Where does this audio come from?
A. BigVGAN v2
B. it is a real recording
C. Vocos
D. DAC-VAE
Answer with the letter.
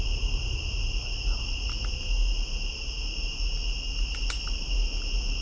B